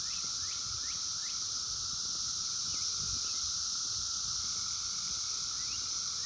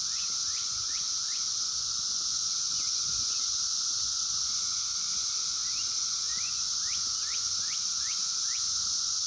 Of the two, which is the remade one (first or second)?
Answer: second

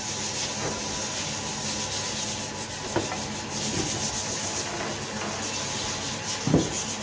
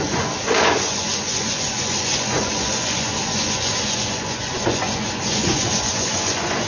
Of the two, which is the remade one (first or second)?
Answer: second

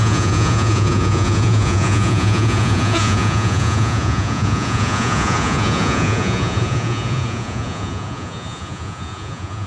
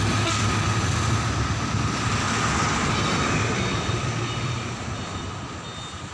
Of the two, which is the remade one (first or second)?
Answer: first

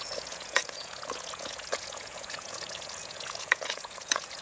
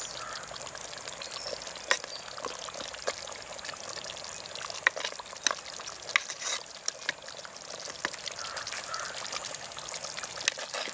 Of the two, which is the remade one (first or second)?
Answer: first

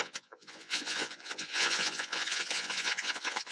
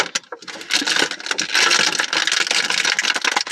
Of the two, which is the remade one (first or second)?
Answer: first